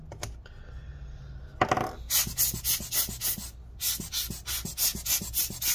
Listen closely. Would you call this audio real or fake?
real